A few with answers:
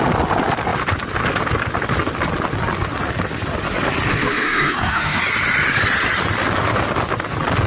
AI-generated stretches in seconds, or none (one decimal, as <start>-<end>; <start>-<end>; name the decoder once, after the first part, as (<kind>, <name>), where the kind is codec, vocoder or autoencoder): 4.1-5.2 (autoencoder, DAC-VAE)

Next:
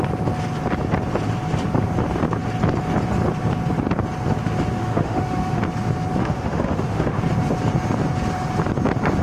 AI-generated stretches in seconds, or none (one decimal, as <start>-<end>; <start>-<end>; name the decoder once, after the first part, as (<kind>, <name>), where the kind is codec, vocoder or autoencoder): 4.8-5.6 (autoencoder, DAC-VAE); 6.2-7.2

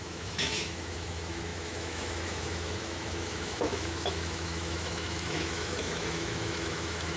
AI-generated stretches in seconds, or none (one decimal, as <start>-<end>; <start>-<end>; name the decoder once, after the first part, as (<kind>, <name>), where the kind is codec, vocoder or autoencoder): 0.0-7.2 (autoencoder, DAC-VAE)

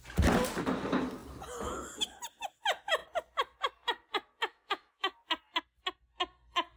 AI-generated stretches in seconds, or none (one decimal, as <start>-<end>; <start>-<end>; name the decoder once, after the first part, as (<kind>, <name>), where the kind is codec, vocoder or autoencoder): 4.5-5.1 (autoencoder, DAC-VAE)

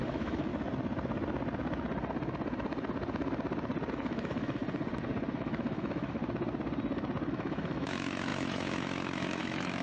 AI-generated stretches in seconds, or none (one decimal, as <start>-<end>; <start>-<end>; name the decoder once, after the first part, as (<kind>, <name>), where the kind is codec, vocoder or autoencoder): 0.0-0.5 (autoencoder, DAC-VAE); 3.9-4.6; 5.3-6.2; 7.3-9.8